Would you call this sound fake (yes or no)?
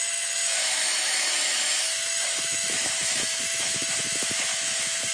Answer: yes